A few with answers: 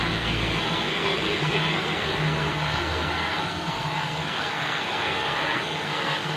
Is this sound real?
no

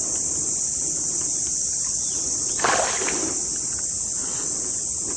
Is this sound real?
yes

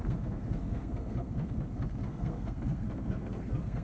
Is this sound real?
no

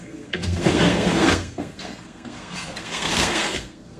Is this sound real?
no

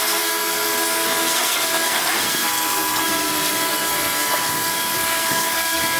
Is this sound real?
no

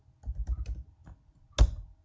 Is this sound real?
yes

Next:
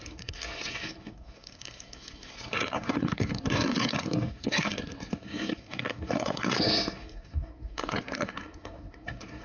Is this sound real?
no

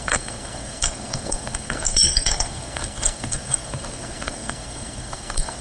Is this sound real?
no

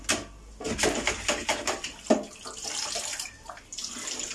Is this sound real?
yes